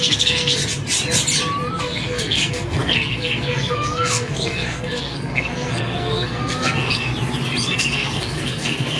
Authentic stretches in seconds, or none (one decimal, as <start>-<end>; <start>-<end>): 0.6-1.8; 7.1-7.6